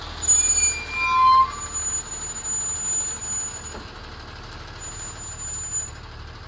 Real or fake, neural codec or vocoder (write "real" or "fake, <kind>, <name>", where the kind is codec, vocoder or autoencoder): real